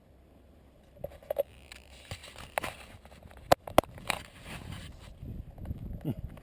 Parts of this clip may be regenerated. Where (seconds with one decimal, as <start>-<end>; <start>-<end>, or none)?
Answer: none